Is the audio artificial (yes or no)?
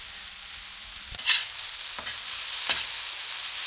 no